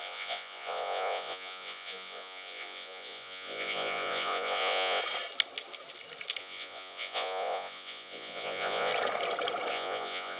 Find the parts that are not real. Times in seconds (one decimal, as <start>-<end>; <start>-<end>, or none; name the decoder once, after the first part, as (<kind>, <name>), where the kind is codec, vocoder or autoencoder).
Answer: 0.0-5.0 (vocoder, Vocos); 6.4-8.9; 9.7-10.4